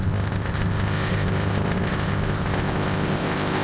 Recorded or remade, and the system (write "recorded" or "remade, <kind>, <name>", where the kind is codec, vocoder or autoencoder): remade, codec, ZipCodec